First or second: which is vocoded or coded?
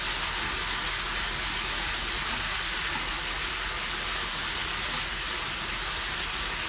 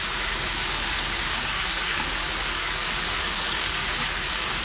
second